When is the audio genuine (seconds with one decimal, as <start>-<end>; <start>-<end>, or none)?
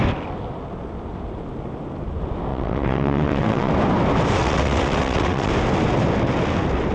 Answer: 0.0-2.5; 3.7-4.4; 5.5-6.9